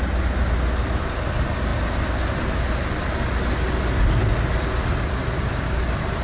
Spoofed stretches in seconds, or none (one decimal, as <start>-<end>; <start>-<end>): none